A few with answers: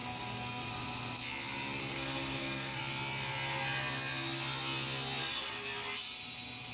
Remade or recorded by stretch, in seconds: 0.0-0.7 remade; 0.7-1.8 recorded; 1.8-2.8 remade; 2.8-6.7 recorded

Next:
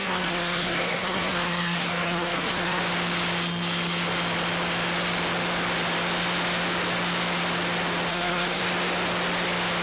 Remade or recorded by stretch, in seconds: 0.0-2.8 remade; 2.8-8.1 recorded; 8.1-8.6 remade; 8.6-9.8 recorded